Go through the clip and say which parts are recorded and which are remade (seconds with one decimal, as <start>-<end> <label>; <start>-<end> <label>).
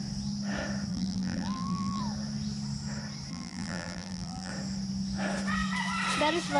0.0-0.9 recorded; 0.9-2.0 remade; 2.0-3.3 recorded; 3.3-4.5 remade; 4.5-6.6 recorded